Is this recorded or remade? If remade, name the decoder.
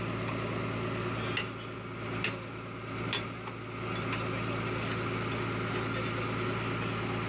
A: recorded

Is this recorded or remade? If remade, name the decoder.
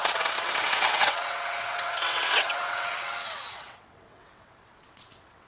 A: remade, vocoder, WaveNeXt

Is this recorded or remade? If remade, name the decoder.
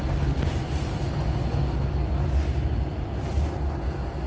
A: recorded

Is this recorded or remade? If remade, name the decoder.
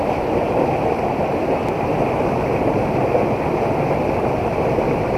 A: recorded